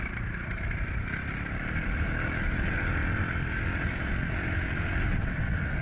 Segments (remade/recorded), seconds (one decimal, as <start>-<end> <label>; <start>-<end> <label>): 0.0-5.1 recorded; 5.1-5.8 remade